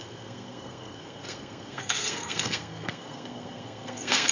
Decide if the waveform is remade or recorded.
remade